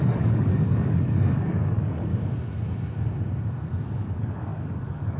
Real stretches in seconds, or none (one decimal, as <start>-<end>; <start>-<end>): 2.1-4.0